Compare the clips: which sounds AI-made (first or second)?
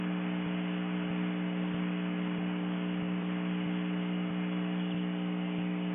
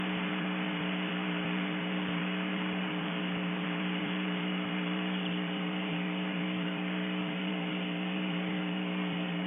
second